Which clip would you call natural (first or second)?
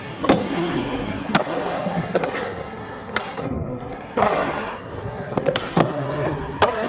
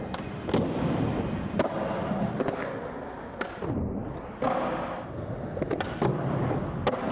second